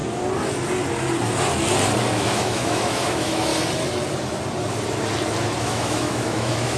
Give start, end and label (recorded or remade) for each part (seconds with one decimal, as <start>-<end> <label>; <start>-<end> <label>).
0.0-2.1 recorded; 2.1-3.5 remade; 3.5-5.6 recorded; 5.6-6.8 remade